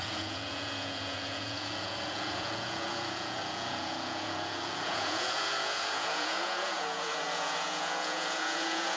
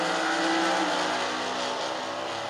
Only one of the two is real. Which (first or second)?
second